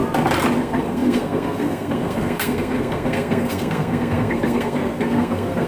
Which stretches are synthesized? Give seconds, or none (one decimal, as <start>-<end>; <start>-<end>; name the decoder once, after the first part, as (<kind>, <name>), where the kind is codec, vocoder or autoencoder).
0.6-5.7 (codec, SNAC)